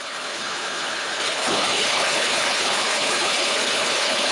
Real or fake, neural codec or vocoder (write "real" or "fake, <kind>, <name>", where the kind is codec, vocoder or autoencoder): fake, codec, HILCodec